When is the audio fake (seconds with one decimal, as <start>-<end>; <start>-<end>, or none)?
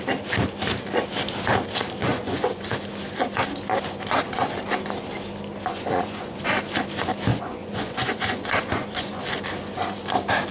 2.0-2.7; 5.7-6.4; 7.3-9.2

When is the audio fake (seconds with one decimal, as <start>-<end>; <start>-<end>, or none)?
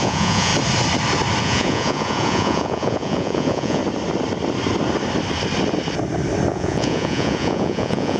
0.0-0.5; 1.4-3.8; 6.5-8.2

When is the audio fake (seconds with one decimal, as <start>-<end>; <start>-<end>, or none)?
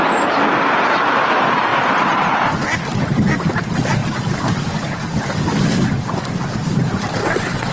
7.2-7.7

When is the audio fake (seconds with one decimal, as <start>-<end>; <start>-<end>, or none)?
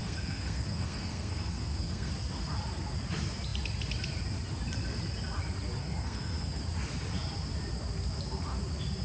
0.0-2.1; 5.8-6.6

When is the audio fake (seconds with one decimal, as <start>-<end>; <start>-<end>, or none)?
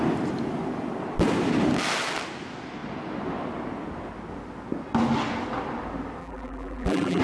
6.2-7.2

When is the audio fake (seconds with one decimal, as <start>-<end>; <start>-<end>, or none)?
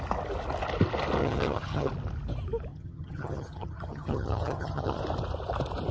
1.2-1.9; 2.7-5.0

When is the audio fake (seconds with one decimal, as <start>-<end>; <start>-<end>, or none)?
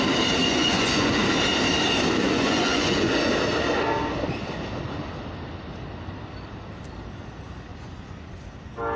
0.4-1.2; 2.2-3.3; 7.7-8.5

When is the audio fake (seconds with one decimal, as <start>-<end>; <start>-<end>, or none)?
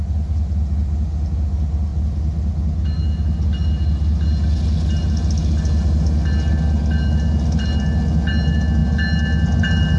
none